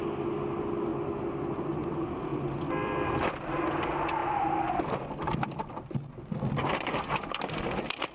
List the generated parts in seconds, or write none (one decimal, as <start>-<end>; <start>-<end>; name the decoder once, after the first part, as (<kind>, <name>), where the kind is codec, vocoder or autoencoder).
2.3-3.1 (vocoder, BigVGAN v2); 4.2-4.8; 6.6-8.1